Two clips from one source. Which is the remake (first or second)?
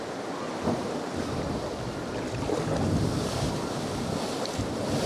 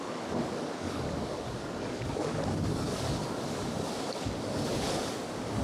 second